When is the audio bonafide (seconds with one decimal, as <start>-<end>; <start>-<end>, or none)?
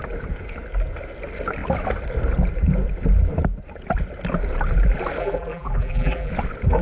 0.0-5.2; 6.3-6.8